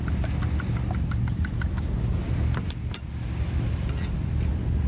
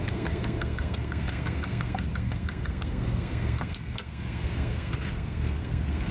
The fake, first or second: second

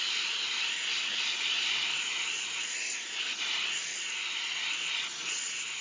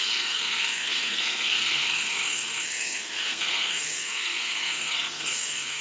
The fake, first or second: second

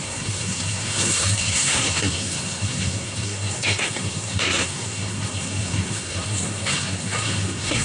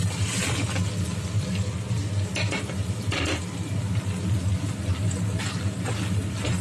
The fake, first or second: first